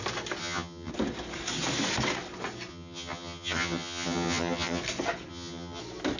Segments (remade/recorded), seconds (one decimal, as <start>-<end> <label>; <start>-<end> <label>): 0.0-0.4 recorded; 0.4-0.9 remade; 0.9-2.7 recorded; 2.7-4.8 remade; 4.8-5.3 recorded; 5.3-5.8 remade; 5.8-6.2 recorded